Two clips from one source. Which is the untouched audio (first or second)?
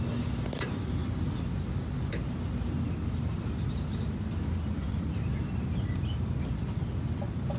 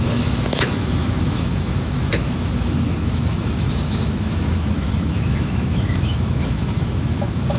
first